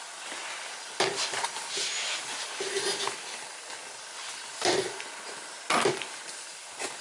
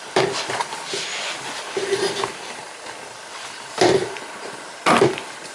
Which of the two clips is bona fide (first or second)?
first